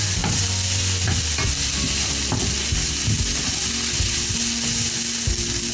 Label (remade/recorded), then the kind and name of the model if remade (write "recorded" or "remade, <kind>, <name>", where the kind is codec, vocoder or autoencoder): recorded